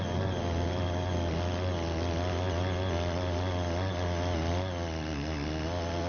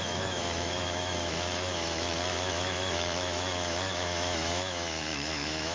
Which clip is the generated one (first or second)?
second